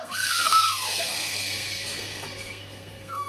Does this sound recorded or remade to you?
remade